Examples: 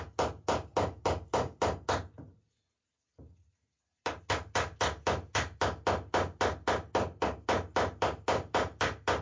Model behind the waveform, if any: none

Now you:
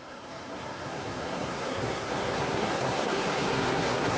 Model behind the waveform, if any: codec, SNAC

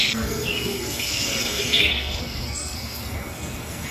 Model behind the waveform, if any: codec, SNAC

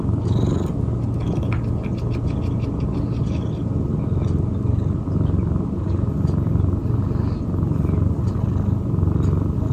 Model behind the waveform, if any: none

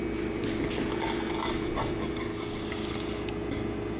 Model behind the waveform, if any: none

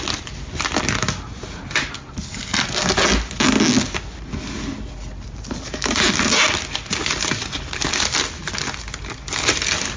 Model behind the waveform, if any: none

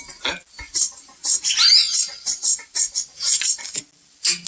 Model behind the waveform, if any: none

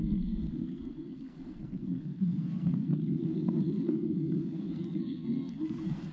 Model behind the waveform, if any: codec, SNAC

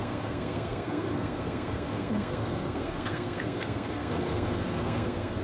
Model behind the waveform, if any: codec, SNAC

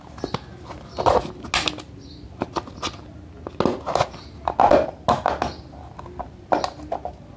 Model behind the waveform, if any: none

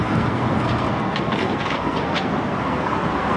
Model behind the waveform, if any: codec, SNAC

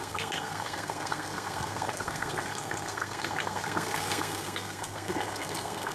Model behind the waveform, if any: codec, SNAC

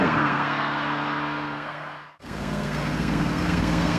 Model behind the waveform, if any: codec, SNAC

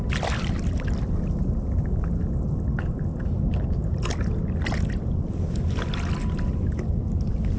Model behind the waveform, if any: none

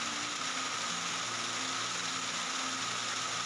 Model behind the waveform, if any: none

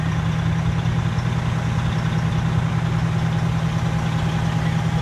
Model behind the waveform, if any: none